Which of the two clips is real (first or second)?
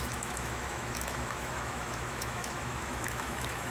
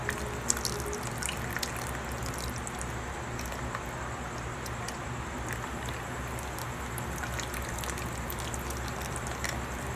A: second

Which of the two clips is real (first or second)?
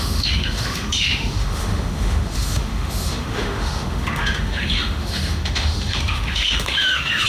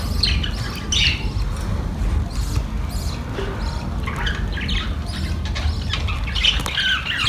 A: second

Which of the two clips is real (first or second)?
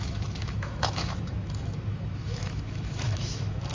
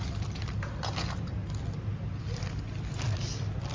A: second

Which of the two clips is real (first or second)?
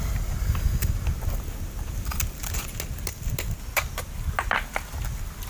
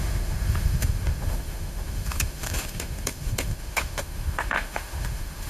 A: first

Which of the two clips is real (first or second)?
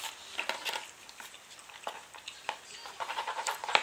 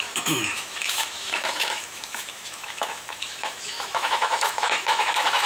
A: first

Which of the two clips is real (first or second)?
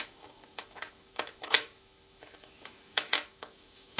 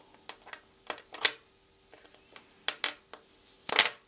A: second